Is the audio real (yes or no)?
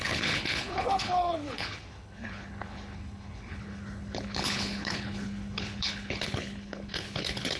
no